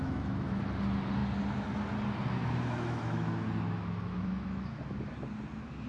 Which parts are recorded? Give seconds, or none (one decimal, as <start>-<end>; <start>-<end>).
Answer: 0.6-2.4; 4.8-5.9